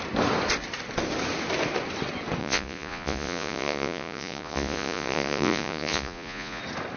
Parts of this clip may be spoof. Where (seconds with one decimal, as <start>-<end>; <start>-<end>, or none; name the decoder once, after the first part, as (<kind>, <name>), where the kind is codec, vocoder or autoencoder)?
2.4-6.6 (vocoder, Vocos)